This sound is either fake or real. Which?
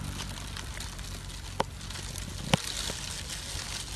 real